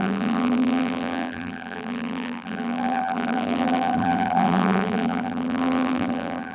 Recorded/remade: remade